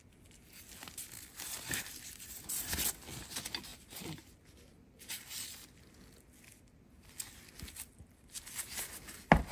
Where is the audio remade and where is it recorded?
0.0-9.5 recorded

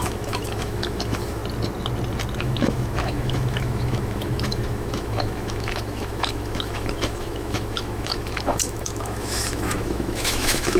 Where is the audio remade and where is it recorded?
0.0-1.4 remade; 1.4-2.4 recorded; 2.4-10.8 remade

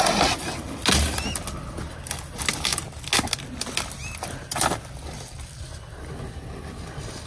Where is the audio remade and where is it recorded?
0.0-7.3 recorded